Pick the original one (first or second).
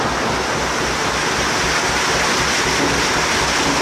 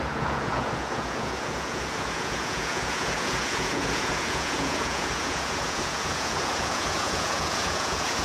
first